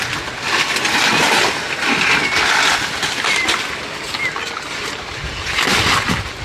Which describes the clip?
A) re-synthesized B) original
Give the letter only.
B